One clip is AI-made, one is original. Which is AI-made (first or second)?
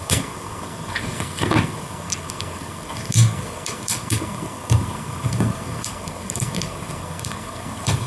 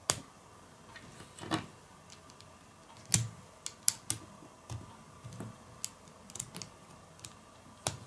first